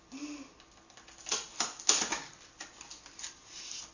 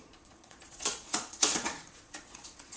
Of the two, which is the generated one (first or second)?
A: second